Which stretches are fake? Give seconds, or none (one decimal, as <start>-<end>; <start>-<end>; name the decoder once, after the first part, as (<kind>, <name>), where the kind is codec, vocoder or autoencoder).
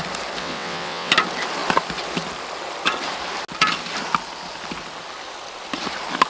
0.4-1.1 (vocoder, WaveNeXt)